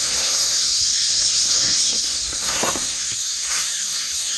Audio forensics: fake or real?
fake